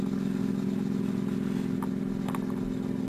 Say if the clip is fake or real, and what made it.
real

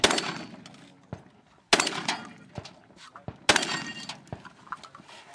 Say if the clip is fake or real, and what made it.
real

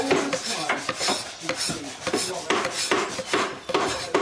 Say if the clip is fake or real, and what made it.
real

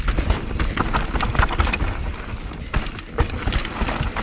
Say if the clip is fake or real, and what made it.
real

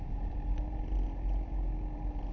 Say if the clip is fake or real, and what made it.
real